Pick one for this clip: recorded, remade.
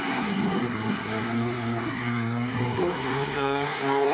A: remade